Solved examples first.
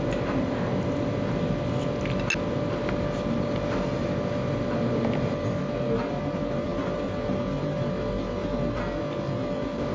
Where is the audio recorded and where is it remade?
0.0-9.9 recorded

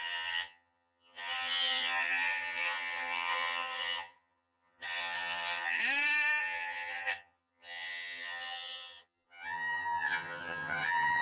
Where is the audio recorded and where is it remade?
0.0-5.8 remade; 5.8-6.4 recorded; 6.4-11.2 remade

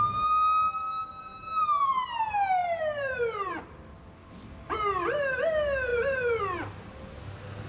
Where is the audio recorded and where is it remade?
0.0-1.3 recorded; 1.3-2.2 remade; 2.2-2.6 recorded; 2.6-3.5 remade; 3.5-5.9 recorded; 5.9-6.4 remade; 6.4-7.7 recorded

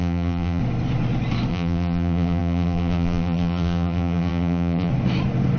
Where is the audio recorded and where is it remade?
0.0-0.6 remade; 0.6-1.5 recorded; 1.5-4.9 remade; 4.9-5.6 recorded

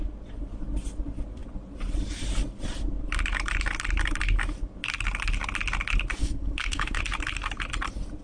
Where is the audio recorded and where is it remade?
0.0-6.2 recorded; 6.2-7.0 remade; 7.0-8.2 recorded